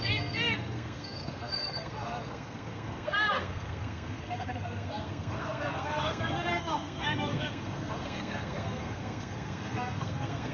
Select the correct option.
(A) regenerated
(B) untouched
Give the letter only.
A